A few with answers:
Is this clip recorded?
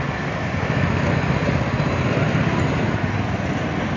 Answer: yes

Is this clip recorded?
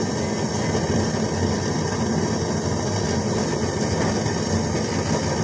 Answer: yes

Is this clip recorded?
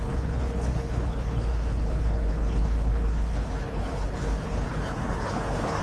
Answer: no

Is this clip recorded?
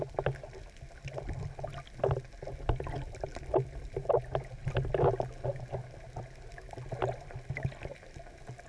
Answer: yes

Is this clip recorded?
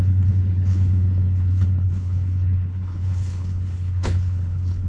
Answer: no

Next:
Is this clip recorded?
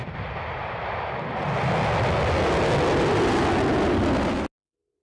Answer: yes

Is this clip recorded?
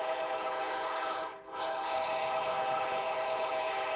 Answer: no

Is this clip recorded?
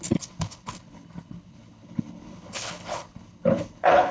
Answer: no